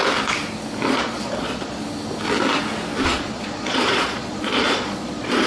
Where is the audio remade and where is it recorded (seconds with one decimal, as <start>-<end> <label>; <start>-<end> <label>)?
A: 0.0-0.9 recorded; 0.9-1.8 remade; 1.8-3.0 recorded; 3.0-5.5 remade